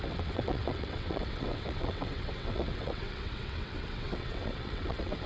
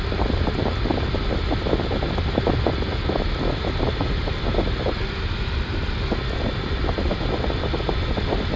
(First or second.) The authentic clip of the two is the second